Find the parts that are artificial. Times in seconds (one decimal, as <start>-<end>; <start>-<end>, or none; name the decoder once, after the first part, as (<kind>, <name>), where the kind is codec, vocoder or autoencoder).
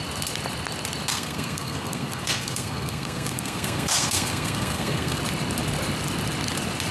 1.1-5.2 (codec, SNAC)